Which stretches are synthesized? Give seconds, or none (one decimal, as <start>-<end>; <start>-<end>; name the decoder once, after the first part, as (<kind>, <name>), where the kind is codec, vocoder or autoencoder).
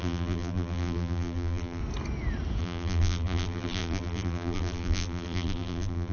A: 0.0-1.8 (vocoder, BigVGAN v2); 2.6-6.1